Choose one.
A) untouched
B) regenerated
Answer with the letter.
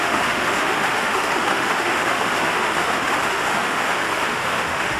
B